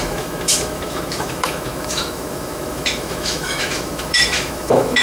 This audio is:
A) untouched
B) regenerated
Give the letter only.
B